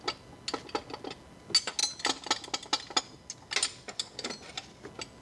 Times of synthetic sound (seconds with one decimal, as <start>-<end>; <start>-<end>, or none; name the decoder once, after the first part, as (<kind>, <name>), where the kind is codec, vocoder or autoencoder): none